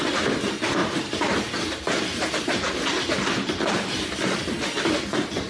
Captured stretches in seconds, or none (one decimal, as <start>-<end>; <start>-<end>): 0.8-3.8